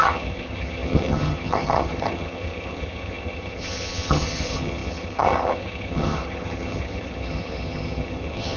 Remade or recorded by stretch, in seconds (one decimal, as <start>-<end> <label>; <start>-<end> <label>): 0.0-8.6 remade